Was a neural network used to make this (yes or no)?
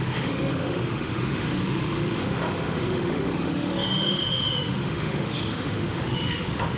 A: yes